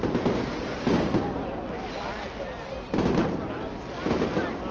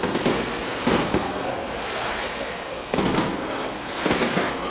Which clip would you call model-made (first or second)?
second